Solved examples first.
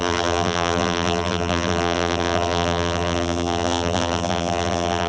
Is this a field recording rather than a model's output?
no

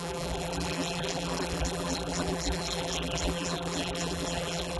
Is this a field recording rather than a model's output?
no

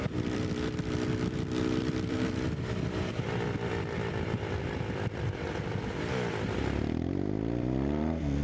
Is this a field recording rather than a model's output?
no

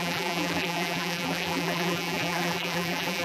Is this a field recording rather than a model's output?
no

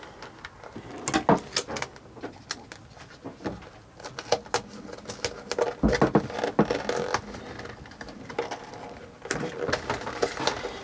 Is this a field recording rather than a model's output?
yes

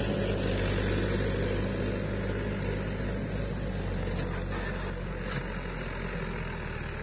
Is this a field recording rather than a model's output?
yes